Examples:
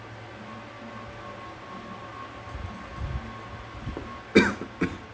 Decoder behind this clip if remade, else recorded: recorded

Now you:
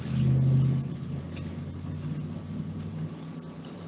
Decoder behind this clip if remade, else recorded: recorded